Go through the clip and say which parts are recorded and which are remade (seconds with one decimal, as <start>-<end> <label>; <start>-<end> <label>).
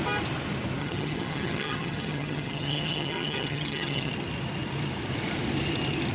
0.0-0.8 recorded; 0.8-4.1 remade; 4.1-6.1 recorded